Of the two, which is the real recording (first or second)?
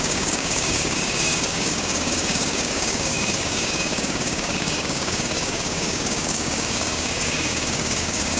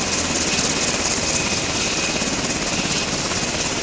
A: second